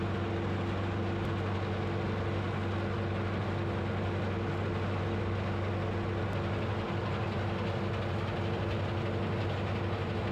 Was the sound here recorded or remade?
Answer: recorded